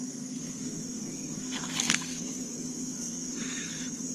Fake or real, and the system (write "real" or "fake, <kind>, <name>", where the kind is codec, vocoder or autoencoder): fake, codec, SNAC